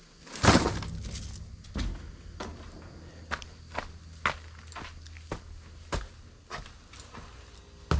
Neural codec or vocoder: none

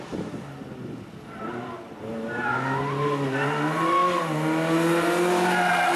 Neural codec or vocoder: none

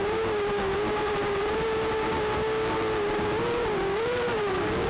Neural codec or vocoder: none